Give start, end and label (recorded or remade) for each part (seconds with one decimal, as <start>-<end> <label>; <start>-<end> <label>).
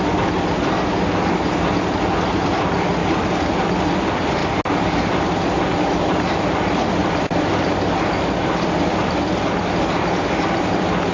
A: 0.0-7.0 recorded; 7.0-7.5 remade; 7.5-11.1 recorded